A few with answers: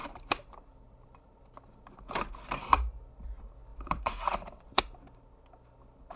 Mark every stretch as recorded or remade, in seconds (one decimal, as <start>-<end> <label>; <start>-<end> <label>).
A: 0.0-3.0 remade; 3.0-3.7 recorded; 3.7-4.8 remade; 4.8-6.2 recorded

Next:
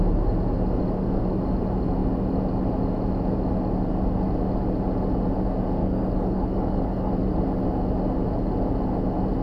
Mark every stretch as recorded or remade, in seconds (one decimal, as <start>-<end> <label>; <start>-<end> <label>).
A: 0.0-5.8 recorded; 5.8-7.1 remade; 7.1-9.4 recorded

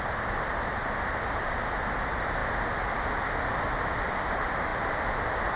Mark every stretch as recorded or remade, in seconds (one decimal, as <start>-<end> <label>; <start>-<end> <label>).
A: 0.0-5.6 recorded

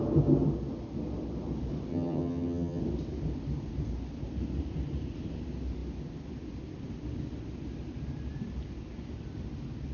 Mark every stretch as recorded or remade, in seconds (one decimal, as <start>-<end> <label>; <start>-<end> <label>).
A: 0.0-1.9 recorded; 1.9-2.8 remade; 2.8-9.9 recorded

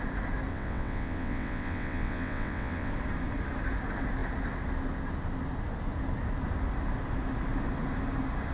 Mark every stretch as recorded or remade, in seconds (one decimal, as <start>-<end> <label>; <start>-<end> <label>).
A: 0.0-0.5 recorded; 0.5-2.9 remade; 2.9-8.5 recorded

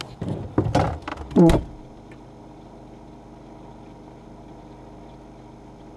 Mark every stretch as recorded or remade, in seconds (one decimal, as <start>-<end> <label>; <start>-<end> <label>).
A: 0.0-6.0 recorded

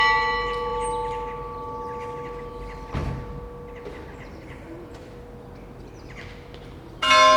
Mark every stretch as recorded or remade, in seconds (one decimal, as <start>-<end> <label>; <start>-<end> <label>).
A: 0.0-4.3 recorded; 4.3-5.1 remade; 5.1-7.4 recorded